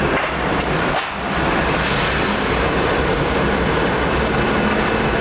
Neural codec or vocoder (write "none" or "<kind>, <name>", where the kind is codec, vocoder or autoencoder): vocoder, BigVGAN v2